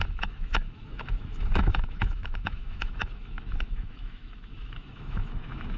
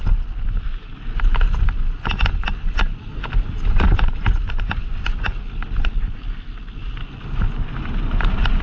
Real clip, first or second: second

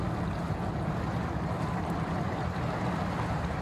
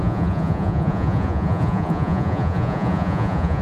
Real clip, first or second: first